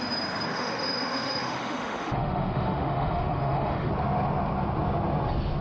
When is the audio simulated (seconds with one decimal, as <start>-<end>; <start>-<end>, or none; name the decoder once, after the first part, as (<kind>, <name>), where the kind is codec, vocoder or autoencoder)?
0.5-3.9 (autoencoder, DAC-VAE)